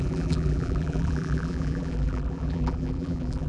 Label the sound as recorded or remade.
remade